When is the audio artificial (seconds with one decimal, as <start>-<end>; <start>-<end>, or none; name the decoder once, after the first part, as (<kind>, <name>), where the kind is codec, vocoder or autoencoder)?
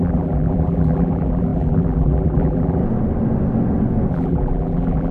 0.0-2.8 (vocoder, BigVGAN v2); 4.1-5.1